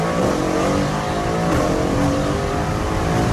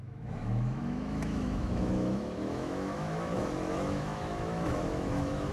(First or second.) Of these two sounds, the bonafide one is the first